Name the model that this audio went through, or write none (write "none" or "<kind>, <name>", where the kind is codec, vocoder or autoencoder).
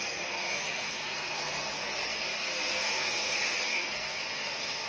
codec, SNAC